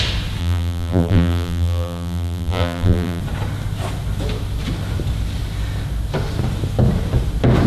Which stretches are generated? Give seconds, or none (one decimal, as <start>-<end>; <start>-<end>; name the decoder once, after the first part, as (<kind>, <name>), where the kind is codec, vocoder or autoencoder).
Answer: 0.4-3.2 (vocoder, BigVGAN v2)